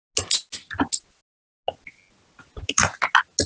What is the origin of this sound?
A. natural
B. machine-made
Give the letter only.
A